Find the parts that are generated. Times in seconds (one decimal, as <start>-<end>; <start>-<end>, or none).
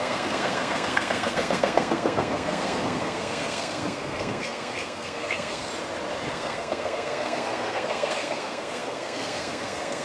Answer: 0.0-5.7; 6.3-10.0